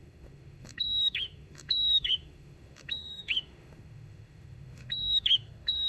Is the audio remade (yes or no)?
yes